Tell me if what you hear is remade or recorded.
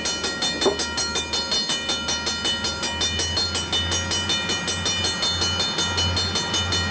recorded